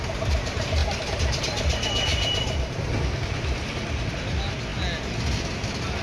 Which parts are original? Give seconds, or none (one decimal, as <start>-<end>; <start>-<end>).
0.0-6.0